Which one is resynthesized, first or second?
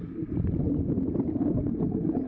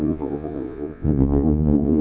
second